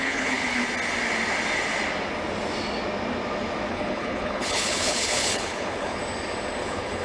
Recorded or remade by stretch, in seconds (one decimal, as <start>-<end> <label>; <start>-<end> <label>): 0.0-0.6 remade; 0.6-3.7 recorded; 3.7-6.0 remade; 6.0-6.6 recorded; 6.6-7.0 remade